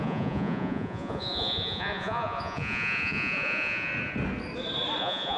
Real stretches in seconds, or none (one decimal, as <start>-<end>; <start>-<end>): 3.9-5.0